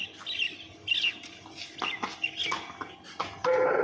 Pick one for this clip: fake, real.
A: real